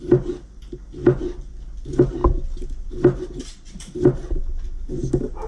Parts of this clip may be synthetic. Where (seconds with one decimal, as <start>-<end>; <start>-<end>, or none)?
none